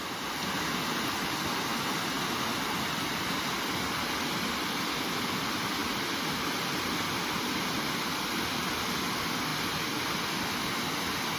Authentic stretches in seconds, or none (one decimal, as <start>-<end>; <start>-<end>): 0.0-11.4